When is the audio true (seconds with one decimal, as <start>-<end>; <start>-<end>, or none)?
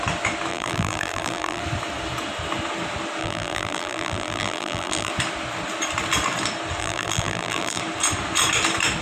0.0-0.5; 1.6-3.2; 5.1-6.8; 7.8-9.0